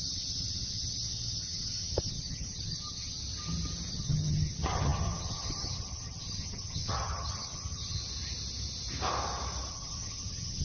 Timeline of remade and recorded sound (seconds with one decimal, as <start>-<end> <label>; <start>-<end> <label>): 0.0-3.2 remade; 3.2-3.9 recorded; 3.9-8.0 remade; 8.0-9.7 recorded; 9.7-10.6 remade